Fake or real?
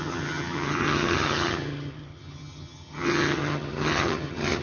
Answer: fake